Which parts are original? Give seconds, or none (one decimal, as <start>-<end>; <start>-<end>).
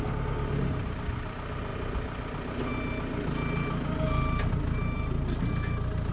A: 0.0-6.1